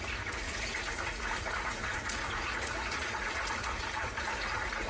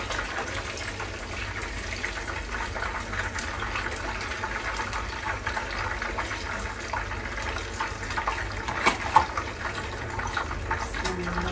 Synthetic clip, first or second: first